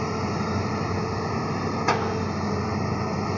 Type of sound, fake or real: real